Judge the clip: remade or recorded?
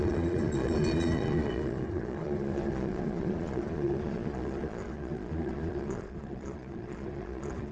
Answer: remade